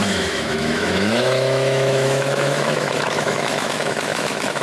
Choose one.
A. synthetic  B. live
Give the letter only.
A